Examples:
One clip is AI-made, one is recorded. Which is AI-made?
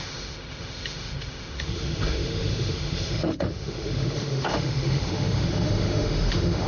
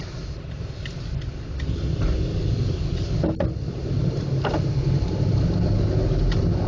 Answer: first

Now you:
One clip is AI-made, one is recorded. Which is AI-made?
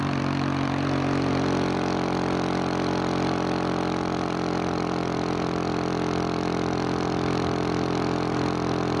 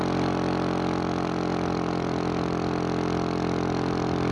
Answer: first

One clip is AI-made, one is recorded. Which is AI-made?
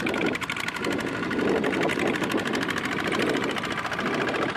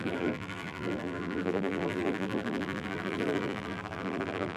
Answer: second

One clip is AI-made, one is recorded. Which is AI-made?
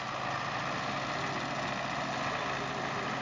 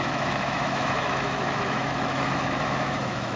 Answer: second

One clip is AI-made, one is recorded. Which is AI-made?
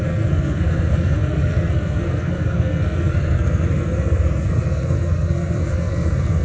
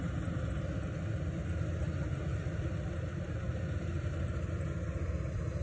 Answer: first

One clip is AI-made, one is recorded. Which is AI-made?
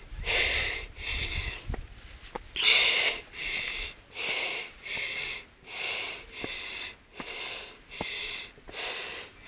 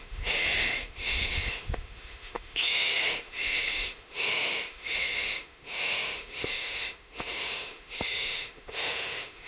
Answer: second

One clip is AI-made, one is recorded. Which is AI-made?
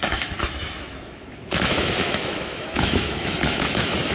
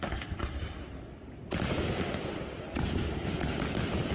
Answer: first